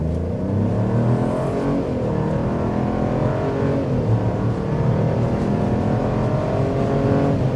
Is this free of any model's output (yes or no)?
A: yes